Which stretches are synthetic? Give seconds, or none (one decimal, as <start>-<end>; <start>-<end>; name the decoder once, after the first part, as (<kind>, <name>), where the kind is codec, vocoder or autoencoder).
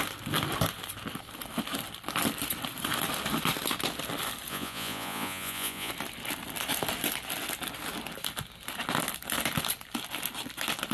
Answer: 4.5-5.9 (vocoder, Vocos)